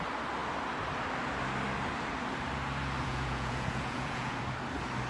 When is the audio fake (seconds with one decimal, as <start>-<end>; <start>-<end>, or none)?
3.0-4.4